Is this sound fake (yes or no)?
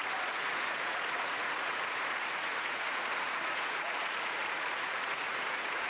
yes